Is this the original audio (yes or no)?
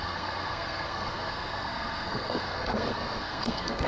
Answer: no